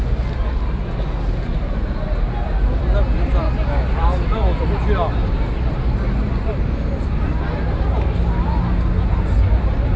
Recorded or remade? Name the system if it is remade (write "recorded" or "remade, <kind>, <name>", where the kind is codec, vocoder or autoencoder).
recorded